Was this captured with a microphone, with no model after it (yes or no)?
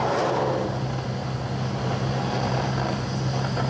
yes